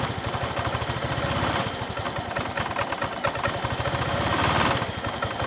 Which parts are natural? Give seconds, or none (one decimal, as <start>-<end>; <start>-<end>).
0.0-5.5